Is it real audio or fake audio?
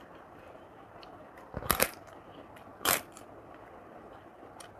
fake